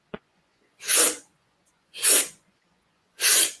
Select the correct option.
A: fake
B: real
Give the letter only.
A